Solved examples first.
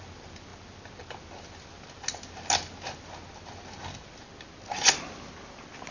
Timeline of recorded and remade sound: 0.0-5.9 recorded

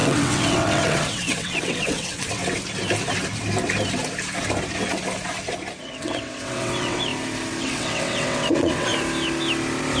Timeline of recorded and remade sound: 0.0-2.4 remade; 2.4-5.8 recorded; 5.8-7.1 remade; 7.1-7.6 recorded; 7.6-8.9 remade; 8.9-10.0 recorded

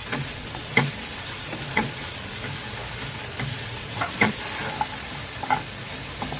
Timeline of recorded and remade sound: 0.0-2.3 remade; 2.3-3.5 recorded; 3.5-4.3 remade; 4.3-6.4 recorded

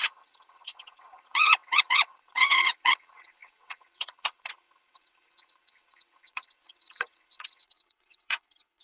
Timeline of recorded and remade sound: 0.0-8.8 remade

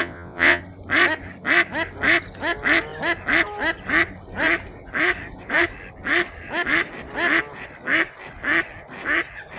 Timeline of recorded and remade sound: 0.0-0.6 remade; 0.6-9.6 recorded